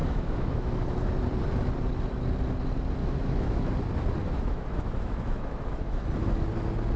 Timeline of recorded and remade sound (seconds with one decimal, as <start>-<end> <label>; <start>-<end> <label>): 0.0-1.1 remade; 1.1-3.0 recorded; 3.0-3.7 remade; 3.7-4.2 recorded; 4.2-6.0 remade; 6.0-7.0 recorded